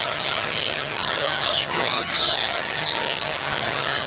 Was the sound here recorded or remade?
remade